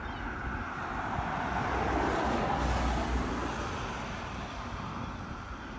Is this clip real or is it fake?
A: real